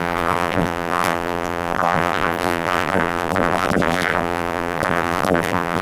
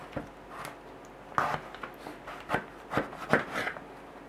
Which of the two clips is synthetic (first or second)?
first